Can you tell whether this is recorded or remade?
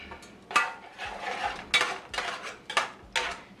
recorded